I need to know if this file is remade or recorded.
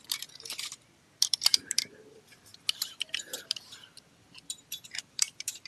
remade